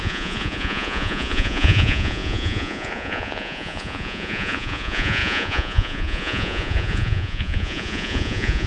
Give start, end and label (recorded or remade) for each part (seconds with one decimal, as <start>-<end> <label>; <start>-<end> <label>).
0.0-8.7 remade